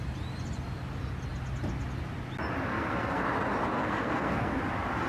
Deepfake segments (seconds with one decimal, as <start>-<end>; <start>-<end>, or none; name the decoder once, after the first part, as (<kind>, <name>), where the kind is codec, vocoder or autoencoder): 2.7-3.2 (codec, SNAC); 3.8-4.6